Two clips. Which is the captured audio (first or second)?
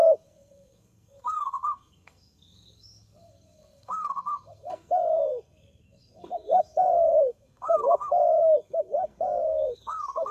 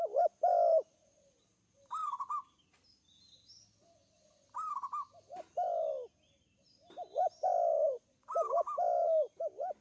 second